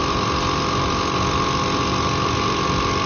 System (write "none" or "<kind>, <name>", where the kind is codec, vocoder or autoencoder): none